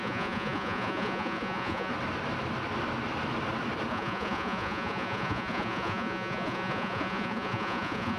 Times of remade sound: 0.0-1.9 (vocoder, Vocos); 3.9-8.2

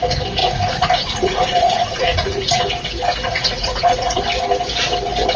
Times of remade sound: 0.4-2.6 (vocoder, Vocos); 3.3-4.2

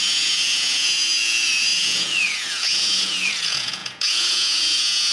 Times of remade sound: 0.0-5.1 (vocoder, Vocos)

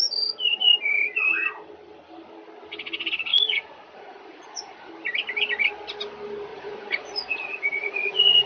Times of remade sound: 3.3-4.9 (vocoder, Vocos); 6.5-8.5

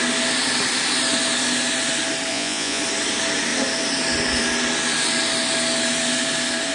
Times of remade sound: 2.3-2.8 (vocoder, Vocos)